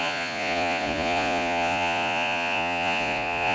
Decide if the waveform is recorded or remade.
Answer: remade